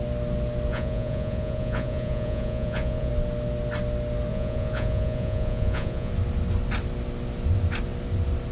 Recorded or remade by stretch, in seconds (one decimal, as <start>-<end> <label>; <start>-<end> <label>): 0.0-0.7 recorded; 0.7-3.1 remade; 3.1-4.3 recorded; 4.3-6.1 remade; 6.1-8.5 recorded